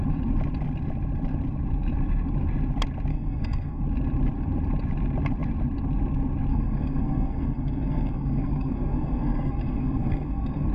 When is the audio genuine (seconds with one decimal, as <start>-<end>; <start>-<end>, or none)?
0.0-3.1; 3.8-6.5